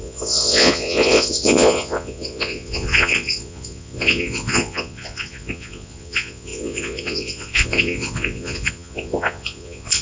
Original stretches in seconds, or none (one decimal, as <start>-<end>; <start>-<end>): none